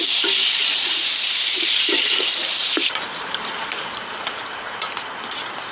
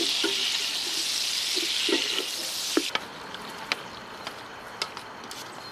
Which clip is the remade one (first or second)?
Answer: first